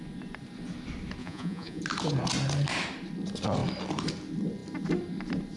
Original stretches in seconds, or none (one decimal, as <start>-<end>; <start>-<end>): 0.0-1.2; 1.8-5.6